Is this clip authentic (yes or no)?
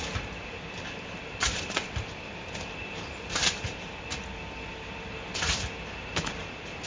no